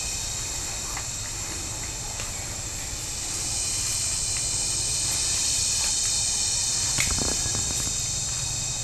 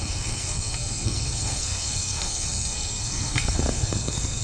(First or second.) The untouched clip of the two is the first